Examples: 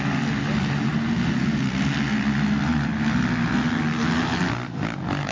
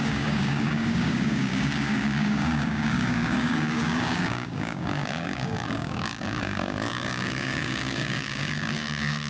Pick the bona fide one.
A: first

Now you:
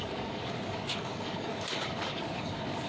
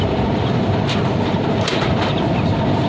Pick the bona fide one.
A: second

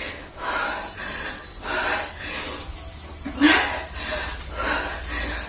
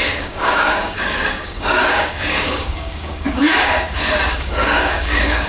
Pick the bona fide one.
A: first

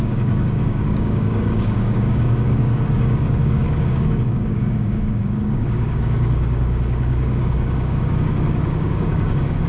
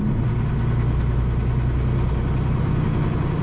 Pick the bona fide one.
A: second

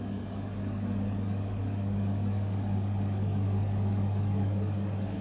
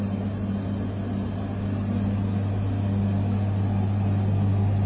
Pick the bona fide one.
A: second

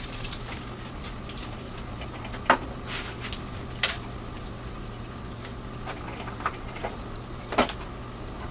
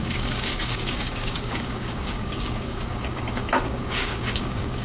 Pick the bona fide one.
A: first